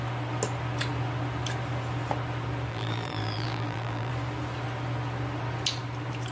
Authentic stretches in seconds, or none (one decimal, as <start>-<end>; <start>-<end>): 0.0-2.7; 4.1-6.3